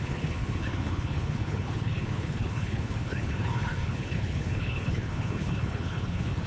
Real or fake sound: fake